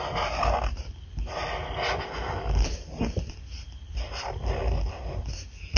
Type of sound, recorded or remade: recorded